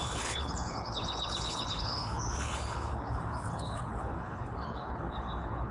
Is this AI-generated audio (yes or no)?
yes